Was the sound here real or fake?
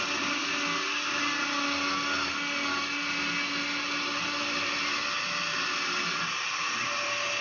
real